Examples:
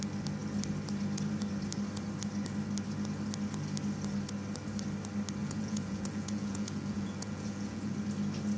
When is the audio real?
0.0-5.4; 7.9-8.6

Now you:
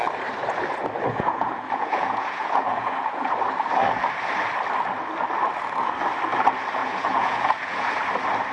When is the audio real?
0.0-1.1; 3.3-6.8; 7.9-8.5

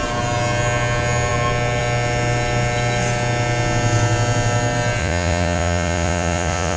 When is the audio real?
0.0-5.0

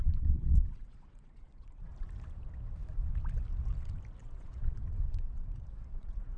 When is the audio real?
1.9-4.2

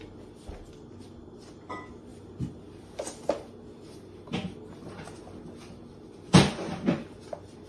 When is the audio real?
0.0-7.7